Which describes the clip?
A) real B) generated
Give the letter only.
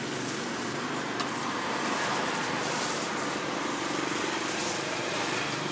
A